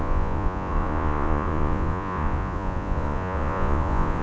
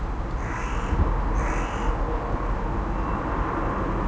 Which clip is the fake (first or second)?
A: first